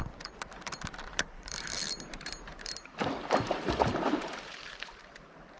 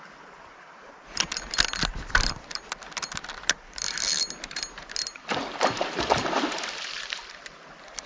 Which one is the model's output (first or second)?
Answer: first